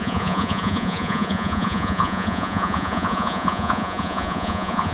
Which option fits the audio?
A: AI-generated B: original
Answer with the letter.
A